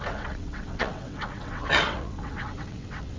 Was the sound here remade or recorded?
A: remade